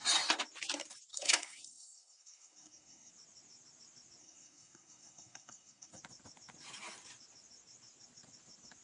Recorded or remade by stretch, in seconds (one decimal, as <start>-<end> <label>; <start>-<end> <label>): 0.0-1.1 recorded; 1.1-3.1 remade; 3.1-4.2 recorded; 4.2-6.0 remade; 6.0-8.8 recorded